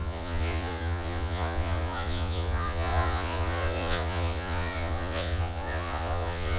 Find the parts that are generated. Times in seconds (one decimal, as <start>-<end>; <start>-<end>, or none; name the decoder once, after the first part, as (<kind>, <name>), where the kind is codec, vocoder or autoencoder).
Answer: 0.0-6.6 (vocoder, Vocos)